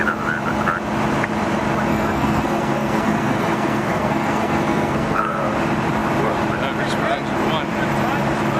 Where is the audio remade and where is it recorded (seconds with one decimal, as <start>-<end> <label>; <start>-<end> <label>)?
0.0-1.9 recorded; 1.9-5.4 remade; 5.4-8.6 recorded